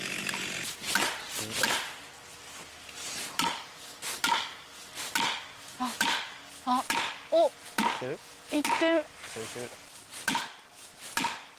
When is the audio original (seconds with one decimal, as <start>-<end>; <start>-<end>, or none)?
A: 0.0-11.6